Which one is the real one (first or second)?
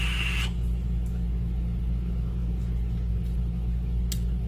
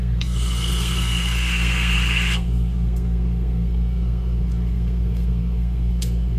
first